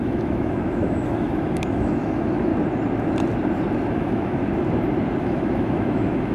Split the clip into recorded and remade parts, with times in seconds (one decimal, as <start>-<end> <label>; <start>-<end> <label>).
0.0-2.5 remade; 2.5-3.9 recorded; 3.9-4.4 remade; 4.4-5.2 recorded; 5.2-6.3 remade